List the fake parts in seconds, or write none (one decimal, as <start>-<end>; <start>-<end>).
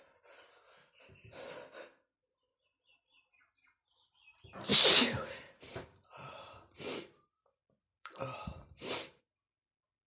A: 4.7-9.2